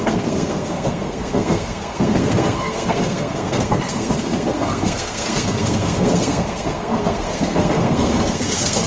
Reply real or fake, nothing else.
fake